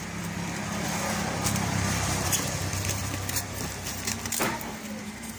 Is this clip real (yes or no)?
yes